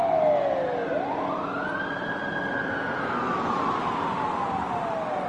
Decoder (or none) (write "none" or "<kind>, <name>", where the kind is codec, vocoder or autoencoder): none